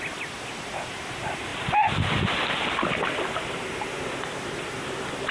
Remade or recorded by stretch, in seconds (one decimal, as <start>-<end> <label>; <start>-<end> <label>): 0.0-5.3 recorded